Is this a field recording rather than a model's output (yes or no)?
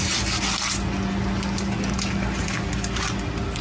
yes